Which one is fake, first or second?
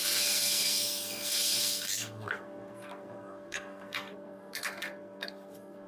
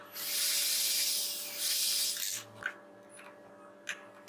first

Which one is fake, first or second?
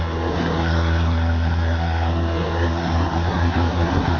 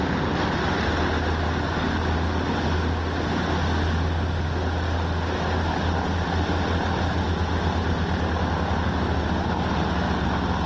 first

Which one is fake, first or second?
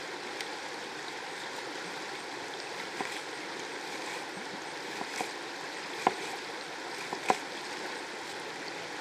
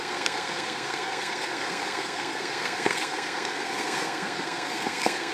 second